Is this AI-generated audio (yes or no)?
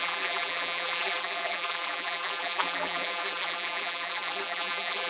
yes